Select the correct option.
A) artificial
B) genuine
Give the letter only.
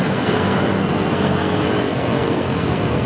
A